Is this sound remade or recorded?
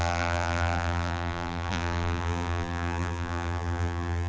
remade